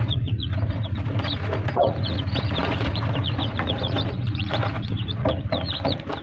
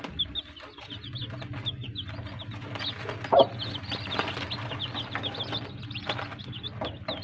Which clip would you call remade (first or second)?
first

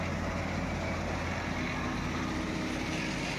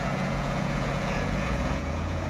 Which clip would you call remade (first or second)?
second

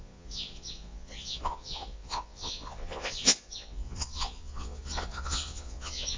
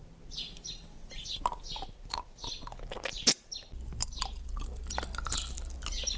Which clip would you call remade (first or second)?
first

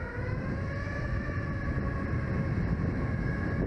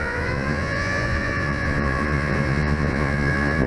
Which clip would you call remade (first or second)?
second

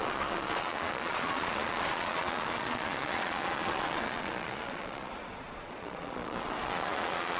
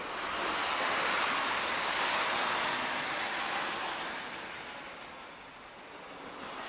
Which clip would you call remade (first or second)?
first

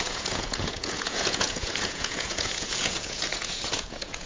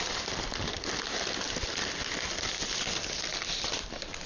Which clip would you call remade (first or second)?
first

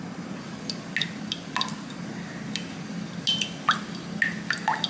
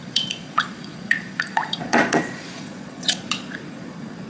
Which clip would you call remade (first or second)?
second